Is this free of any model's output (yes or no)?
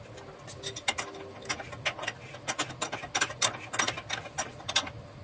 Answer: yes